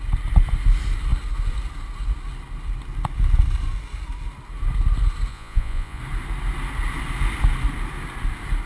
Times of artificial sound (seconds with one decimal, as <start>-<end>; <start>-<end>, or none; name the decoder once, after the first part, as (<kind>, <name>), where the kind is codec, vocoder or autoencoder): 5.3-6.0 (vocoder, Vocos)